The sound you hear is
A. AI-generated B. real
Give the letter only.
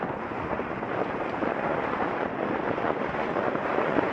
A